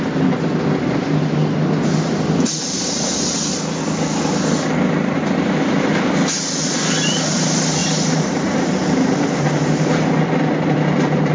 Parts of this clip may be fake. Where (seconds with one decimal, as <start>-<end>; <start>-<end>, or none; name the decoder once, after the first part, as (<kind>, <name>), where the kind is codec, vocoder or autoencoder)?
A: none